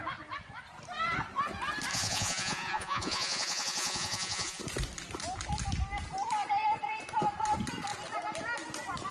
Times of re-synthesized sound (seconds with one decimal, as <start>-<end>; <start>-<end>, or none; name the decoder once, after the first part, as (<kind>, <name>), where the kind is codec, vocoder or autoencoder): 1.9-4.6 (vocoder, Vocos)